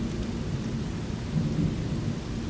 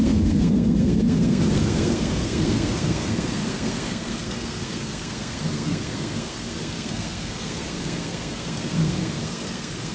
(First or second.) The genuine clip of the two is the first